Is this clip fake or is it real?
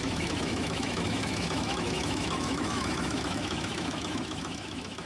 fake